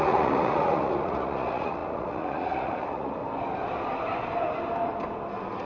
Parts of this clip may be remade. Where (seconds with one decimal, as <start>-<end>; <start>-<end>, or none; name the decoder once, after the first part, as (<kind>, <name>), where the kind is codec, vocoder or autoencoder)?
0.0-3.2 (vocoder, Vocos)